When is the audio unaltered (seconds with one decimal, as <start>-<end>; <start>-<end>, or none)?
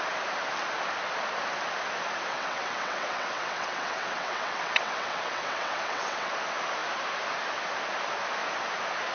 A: 0.0-2.3; 6.3-9.1